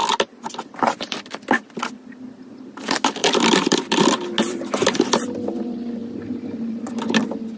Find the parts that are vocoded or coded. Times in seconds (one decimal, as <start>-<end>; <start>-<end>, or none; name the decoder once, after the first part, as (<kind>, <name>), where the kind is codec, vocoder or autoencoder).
3.2-4.0 (vocoder, BigVGAN v2); 6.0-6.9